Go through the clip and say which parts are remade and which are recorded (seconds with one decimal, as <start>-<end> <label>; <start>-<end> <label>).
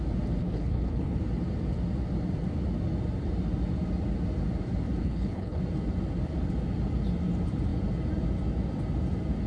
0.0-0.4 recorded; 0.4-1.2 remade; 1.2-5.0 recorded; 5.0-5.6 remade; 5.6-9.5 recorded